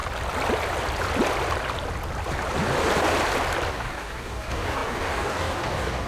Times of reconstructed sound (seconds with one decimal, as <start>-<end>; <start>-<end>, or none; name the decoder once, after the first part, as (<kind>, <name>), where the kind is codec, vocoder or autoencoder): 3.7-6.1 (codec, DAC)